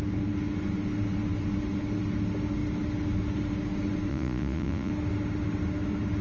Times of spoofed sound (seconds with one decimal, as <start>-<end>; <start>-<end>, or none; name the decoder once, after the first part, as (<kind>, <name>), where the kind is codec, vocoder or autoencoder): 4.1-4.9 (vocoder, Vocos)